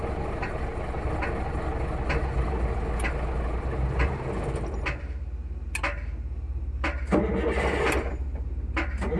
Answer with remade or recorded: recorded